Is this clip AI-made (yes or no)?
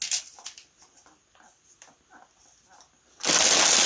no